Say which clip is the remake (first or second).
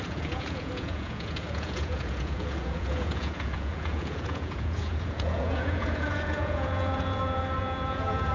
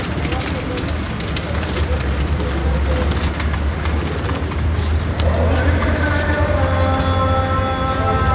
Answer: first